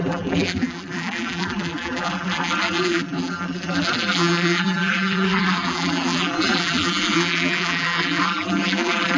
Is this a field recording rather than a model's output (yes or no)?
no